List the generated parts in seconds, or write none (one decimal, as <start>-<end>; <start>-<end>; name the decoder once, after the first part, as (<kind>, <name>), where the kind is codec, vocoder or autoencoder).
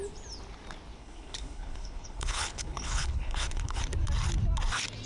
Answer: 1.0-3.8 (codec, HILCodec)